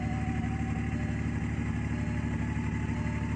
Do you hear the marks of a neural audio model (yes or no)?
no